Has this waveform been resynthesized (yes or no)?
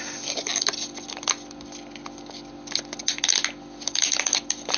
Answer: no